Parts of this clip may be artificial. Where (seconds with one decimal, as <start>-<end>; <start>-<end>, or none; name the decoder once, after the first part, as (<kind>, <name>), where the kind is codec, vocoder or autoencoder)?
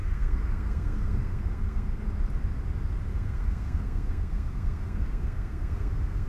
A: 0.0-2.0 (codec, SNAC); 3.1-6.3